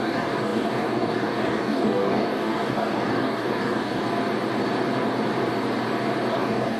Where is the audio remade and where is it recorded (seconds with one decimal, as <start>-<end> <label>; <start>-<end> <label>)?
0.0-4.0 remade; 4.0-6.3 recorded; 6.3-6.8 remade